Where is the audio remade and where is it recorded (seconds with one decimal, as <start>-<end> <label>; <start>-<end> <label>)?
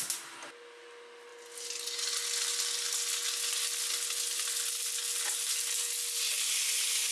0.0-7.1 recorded